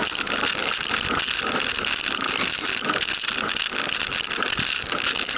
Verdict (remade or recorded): recorded